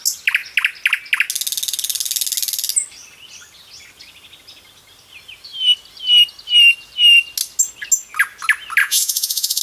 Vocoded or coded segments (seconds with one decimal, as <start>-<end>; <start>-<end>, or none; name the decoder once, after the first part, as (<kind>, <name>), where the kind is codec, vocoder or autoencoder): 8.8-9.6 (vocoder, Vocos)